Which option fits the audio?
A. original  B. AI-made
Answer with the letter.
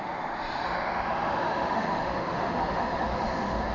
B